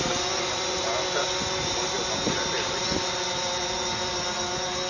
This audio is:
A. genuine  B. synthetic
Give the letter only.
A